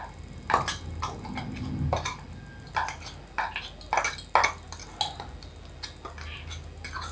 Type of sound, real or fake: real